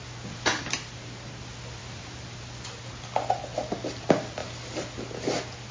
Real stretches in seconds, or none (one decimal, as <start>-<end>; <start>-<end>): 0.0-5.7